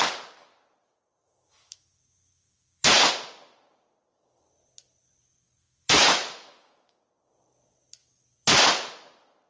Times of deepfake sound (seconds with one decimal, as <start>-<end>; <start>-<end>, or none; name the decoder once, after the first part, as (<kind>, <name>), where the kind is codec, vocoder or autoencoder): 1.2-3.1 (autoencoder, DAC-VAE); 5.6-7.0